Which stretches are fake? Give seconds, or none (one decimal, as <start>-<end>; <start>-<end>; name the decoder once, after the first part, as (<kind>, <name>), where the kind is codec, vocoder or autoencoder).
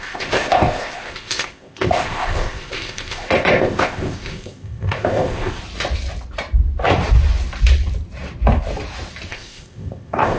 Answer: 0.0-5.6 (codec, ZipCodec); 9.3-10.4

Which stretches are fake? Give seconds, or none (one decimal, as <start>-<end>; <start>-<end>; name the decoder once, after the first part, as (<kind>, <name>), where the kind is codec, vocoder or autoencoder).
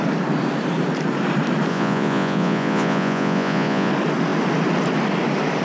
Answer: 1.7-3.9 (vocoder, Vocos)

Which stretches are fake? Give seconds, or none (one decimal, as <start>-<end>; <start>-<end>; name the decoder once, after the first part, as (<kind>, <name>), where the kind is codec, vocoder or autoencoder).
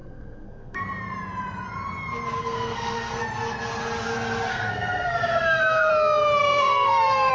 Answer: 0.0-0.8 (codec, SNAC); 2.4-3.2; 4.5-5.9; 6.4-7.3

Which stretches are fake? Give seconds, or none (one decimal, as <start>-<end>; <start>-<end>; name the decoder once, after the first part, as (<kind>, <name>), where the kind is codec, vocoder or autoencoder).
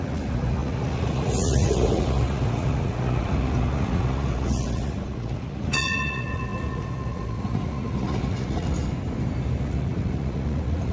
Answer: 0.0-8.8 (vocoder, Vocos); 9.6-10.9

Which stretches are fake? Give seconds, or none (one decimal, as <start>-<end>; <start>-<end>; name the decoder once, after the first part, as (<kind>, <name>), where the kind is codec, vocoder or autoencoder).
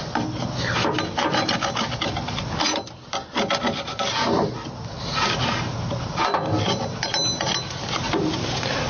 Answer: none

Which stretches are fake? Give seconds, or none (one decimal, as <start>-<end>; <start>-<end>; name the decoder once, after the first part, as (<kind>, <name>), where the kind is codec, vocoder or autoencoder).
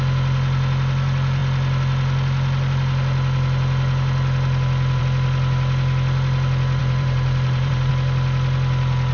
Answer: 6.8-7.9 (vocoder, BigVGAN v2)